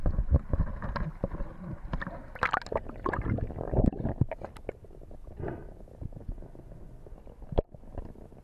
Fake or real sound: real